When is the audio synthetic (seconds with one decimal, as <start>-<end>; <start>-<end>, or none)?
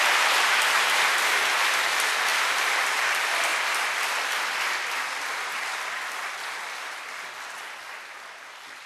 none